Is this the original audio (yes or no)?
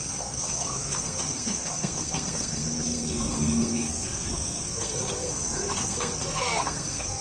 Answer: no